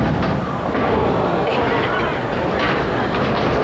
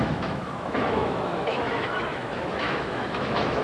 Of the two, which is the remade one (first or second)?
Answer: second